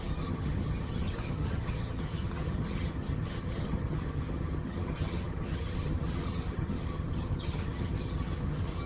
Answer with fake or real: fake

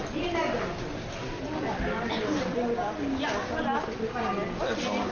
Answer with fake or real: real